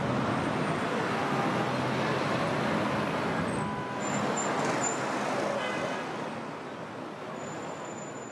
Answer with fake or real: real